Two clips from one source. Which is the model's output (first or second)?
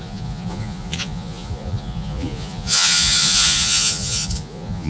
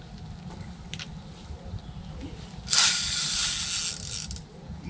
first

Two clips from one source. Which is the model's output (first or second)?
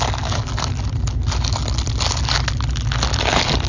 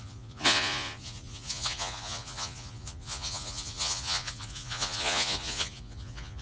second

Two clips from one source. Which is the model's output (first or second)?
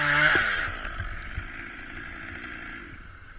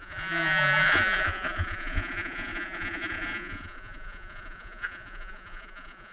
second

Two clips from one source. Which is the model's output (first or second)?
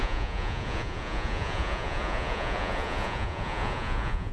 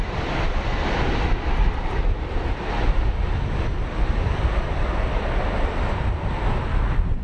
first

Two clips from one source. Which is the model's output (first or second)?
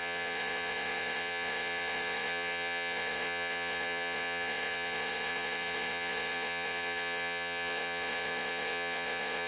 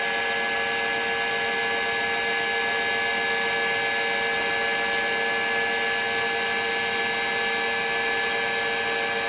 first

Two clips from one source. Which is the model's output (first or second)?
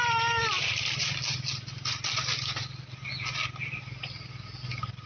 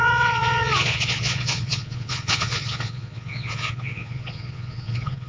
second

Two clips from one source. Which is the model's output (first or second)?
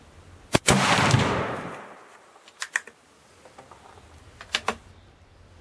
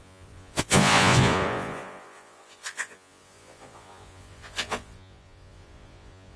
second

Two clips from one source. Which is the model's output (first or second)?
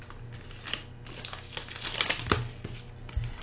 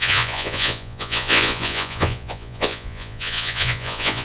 second